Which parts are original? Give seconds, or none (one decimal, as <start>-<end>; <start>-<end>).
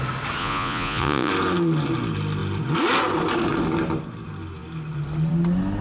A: 0.0-0.4; 1.3-5.8